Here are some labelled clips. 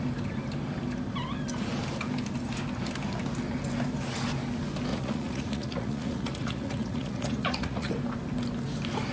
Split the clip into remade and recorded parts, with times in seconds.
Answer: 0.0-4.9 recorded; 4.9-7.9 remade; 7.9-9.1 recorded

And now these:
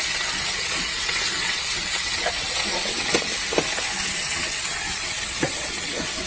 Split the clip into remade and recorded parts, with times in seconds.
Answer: 0.0-3.3 remade; 3.3-4.1 recorded; 4.1-6.3 remade

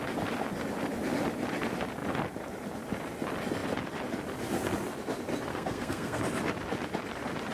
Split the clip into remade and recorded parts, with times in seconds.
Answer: 0.0-5.5 recorded; 5.5-6.2 remade; 6.2-7.5 recorded

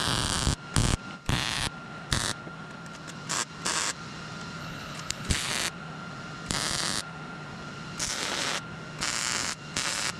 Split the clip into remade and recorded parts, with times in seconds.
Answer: 0.0-4.6 recorded; 4.6-5.5 remade; 5.5-10.2 recorded